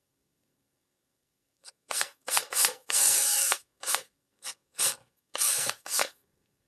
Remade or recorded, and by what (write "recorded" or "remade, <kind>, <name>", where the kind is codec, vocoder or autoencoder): remade, codec, SNAC